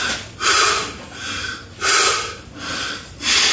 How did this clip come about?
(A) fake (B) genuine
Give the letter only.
B